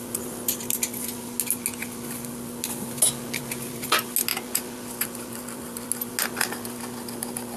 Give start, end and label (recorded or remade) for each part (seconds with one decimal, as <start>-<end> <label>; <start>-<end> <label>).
0.0-7.6 recorded